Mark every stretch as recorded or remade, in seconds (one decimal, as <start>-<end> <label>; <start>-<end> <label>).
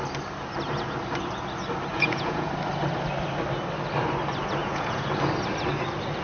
0.0-1.9 recorded; 1.9-2.5 remade; 2.5-4.6 recorded; 4.6-5.1 remade; 5.1-6.2 recorded